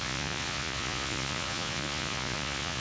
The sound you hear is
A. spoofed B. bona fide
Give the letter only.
A